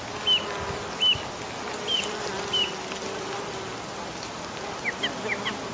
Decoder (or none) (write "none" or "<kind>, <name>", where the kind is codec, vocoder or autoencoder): none